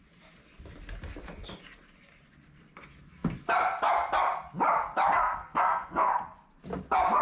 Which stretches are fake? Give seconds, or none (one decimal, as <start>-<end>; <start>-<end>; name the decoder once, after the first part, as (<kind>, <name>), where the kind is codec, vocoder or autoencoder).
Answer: 5.4-6.1 (codec, SNAC)